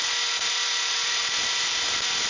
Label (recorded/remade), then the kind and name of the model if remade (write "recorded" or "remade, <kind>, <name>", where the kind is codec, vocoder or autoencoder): recorded